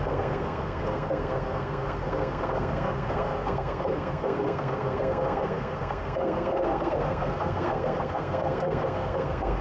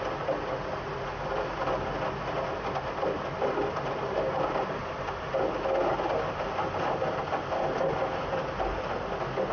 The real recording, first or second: second